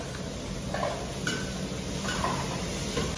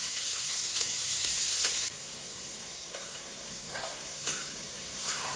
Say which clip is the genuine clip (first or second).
first